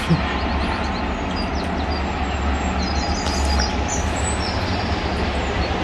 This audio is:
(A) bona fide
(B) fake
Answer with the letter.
A